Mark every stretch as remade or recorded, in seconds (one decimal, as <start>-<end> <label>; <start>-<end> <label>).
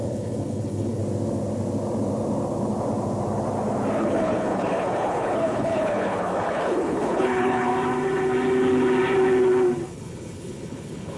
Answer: 0.0-1.0 remade; 1.0-4.0 recorded; 4.0-7.7 remade; 7.7-9.8 recorded; 9.8-11.2 remade